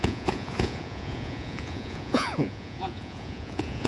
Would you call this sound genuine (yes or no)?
no